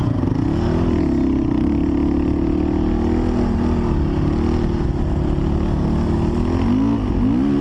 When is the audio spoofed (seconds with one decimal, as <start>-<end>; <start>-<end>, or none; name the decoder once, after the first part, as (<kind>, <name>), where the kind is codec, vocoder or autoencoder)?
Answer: none